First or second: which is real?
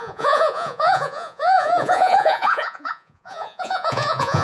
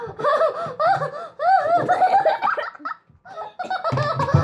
second